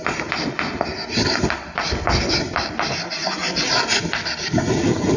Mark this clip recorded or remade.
recorded